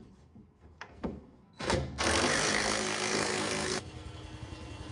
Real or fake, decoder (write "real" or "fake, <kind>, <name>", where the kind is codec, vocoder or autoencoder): fake, codec, SNAC